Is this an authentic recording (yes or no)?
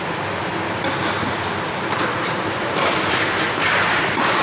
no